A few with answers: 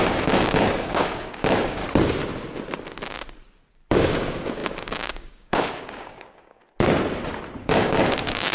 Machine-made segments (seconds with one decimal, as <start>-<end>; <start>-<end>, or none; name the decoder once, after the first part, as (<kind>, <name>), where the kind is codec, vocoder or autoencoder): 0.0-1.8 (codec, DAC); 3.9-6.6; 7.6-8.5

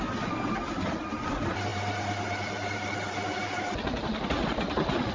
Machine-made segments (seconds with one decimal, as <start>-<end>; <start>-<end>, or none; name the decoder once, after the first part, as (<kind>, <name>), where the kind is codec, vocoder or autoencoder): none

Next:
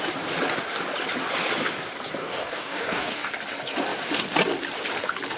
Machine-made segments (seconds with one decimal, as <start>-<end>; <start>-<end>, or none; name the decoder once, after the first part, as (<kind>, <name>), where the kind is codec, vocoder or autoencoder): 2.2-3.3 (codec, DAC)